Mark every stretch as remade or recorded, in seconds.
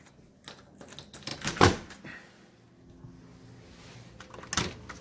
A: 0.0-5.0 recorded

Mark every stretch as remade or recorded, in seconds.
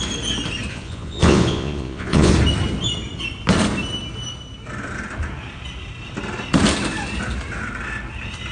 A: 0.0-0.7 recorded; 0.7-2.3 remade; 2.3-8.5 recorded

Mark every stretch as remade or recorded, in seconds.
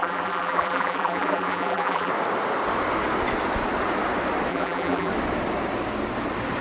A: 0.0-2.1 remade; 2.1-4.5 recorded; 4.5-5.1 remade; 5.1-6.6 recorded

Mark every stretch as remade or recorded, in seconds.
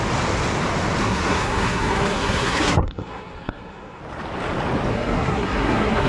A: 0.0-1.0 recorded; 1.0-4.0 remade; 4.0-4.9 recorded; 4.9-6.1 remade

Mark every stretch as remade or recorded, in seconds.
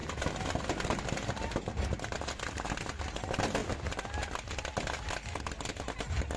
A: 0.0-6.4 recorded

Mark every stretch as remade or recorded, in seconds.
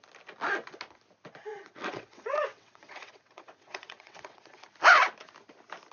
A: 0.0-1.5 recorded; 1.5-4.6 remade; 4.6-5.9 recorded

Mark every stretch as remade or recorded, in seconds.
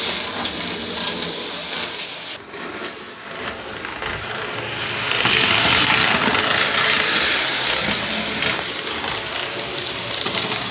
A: 0.0-10.7 recorded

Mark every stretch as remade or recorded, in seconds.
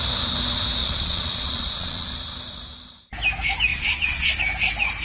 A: 0.0-0.8 recorded; 0.8-2.2 remade; 2.2-3.7 recorded; 3.7-4.4 remade; 4.4-5.0 recorded